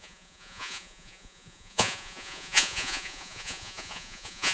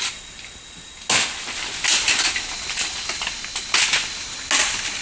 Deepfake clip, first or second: first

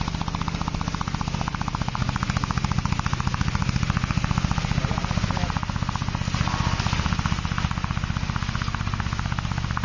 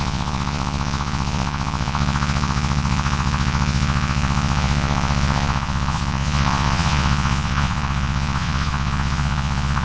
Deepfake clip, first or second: second